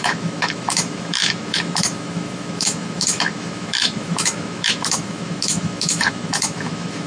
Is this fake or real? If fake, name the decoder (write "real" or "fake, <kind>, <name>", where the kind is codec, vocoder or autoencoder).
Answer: fake, autoencoder, DAC-VAE